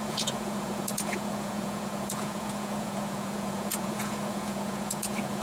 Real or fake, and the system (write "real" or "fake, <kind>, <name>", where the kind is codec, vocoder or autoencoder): fake, vocoder, Vocos